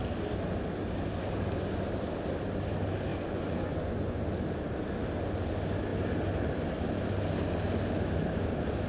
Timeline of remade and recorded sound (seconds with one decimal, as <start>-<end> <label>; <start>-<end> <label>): 0.0-3.1 recorded; 3.1-4.2 remade; 4.2-8.9 recorded